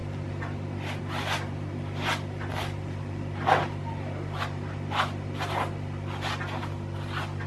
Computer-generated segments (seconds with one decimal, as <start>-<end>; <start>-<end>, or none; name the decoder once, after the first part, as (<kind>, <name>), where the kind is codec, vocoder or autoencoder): none